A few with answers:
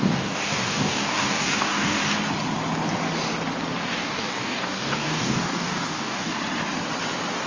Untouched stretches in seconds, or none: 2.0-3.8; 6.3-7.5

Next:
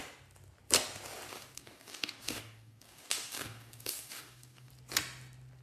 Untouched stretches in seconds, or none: 0.0-1.3; 4.7-5.6

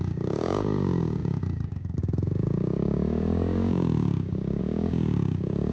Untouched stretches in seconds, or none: none

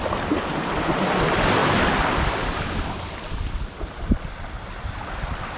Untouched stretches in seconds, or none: 0.0-5.6

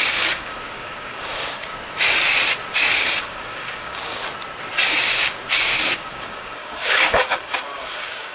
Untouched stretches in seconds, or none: 1.7-3.0; 4.2-5.0

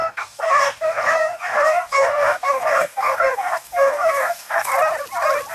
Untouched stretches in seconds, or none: 4.7-5.5